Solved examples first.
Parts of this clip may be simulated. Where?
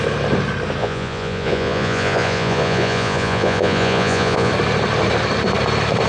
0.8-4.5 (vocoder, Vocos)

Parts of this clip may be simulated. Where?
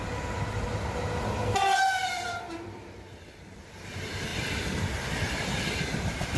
2.0-3.6 (vocoder, BigVGAN v2); 4.3-6.4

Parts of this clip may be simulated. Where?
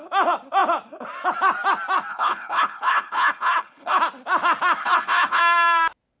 2.1-4.0 (codec, HILCodec); 4.8-5.4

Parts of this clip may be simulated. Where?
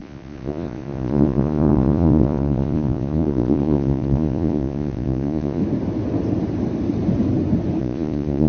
0.0-5.6 (vocoder, Vocos); 7.8-8.5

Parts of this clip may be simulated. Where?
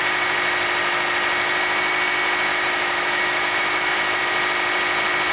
2.5-4.2 (autoencoder, DAC-VAE)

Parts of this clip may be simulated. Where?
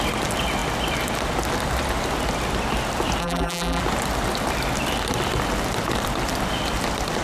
3.2-3.8 (vocoder, BigVGAN v2)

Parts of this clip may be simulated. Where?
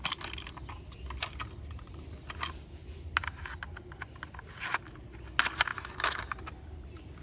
none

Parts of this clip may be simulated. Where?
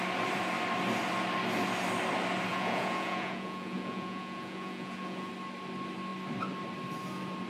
2.5-5.3 (vocoder, Vocos)